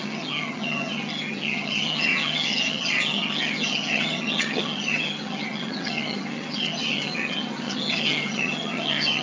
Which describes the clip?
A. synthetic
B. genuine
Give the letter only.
A